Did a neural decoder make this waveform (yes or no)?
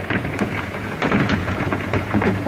yes